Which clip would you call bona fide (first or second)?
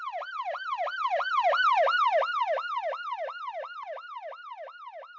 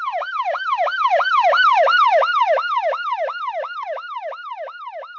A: first